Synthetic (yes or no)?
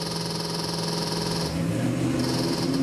no